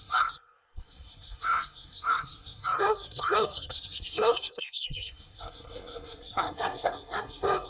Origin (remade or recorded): remade